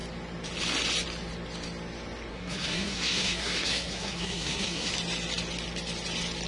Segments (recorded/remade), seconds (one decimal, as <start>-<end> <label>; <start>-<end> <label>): 0.0-2.3 recorded; 2.3-4.9 remade; 4.9-6.5 recorded